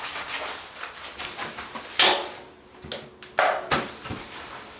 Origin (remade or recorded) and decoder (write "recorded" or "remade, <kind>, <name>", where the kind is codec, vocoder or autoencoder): recorded